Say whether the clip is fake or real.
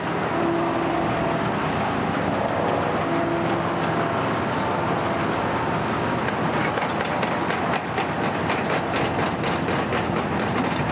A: real